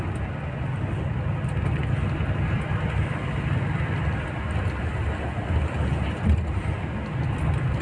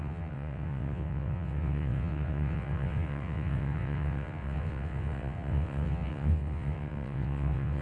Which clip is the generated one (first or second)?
second